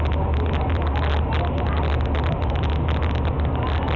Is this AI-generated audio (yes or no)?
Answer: no